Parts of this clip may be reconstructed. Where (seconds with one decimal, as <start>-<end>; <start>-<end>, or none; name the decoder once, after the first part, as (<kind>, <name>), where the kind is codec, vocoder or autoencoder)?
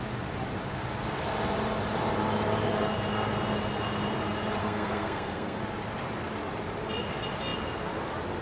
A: 4.6-5.6 (codec, SNAC)